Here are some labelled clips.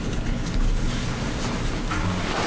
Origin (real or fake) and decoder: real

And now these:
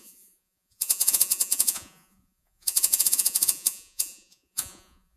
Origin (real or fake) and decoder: fake, vocoder, Vocos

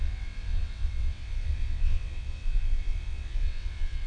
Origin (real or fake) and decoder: fake, vocoder, WaveNeXt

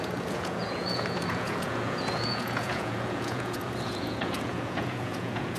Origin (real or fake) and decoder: fake, vocoder, Vocos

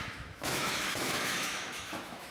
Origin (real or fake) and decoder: fake, autoencoder, DAC-VAE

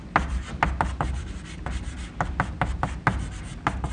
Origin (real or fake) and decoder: real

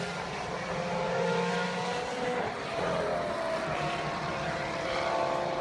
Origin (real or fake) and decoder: real